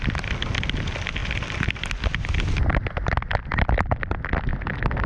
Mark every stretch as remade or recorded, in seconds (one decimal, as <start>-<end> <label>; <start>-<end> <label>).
0.0-5.1 recorded